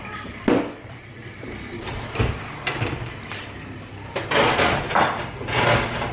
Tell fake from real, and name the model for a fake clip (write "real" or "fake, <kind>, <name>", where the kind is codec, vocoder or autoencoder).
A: real